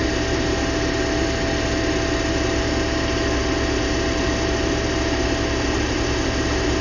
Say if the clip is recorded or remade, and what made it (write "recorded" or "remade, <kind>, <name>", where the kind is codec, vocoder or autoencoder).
recorded